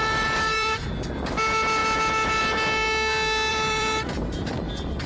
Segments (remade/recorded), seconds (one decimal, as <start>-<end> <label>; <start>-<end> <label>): 0.0-0.9 remade; 0.9-3.5 recorded; 3.5-4.5 remade; 4.5-5.1 recorded